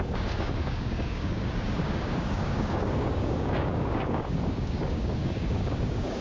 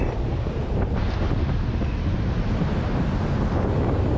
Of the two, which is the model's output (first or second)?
first